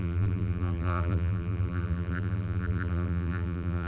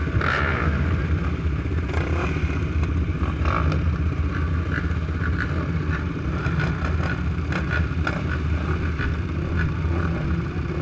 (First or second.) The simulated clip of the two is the first